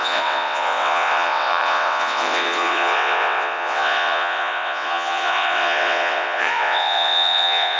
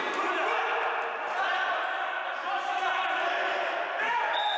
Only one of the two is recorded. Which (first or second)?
second